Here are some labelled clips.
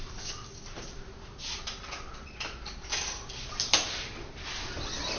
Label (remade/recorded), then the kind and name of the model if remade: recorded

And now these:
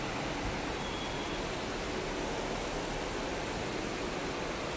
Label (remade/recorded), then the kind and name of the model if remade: recorded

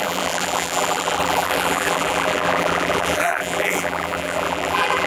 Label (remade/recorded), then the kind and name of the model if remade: remade, vocoder, BigVGAN v2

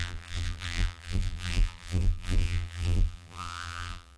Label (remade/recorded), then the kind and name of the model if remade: remade, vocoder, BigVGAN v2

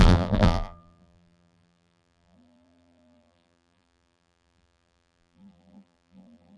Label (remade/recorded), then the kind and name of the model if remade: remade, vocoder, BigVGAN v2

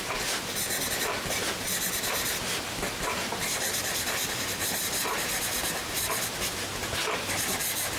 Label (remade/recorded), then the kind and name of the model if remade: recorded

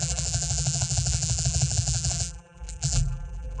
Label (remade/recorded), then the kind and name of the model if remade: remade, vocoder, BigVGAN v2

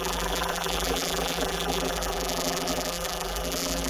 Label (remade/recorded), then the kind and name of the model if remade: remade, vocoder, BigVGAN v2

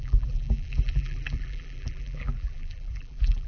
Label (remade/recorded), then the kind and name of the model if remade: remade, vocoder, BigVGAN v2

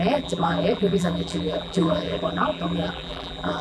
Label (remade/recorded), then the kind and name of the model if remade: remade, vocoder, BigVGAN v2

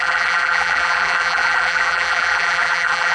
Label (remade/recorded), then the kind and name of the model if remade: remade, vocoder, BigVGAN v2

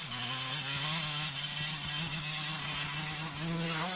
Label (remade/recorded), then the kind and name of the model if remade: recorded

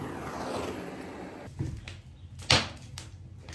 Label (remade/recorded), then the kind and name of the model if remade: recorded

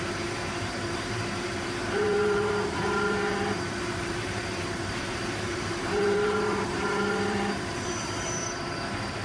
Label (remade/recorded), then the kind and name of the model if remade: remade, vocoder, BigVGAN v2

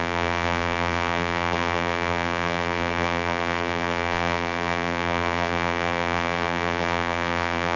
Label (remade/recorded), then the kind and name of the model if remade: remade, vocoder, BigVGAN v2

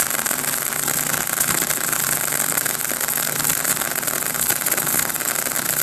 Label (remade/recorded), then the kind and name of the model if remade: recorded